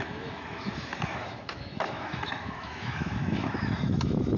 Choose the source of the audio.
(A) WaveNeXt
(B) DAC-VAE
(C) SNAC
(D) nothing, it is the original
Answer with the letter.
B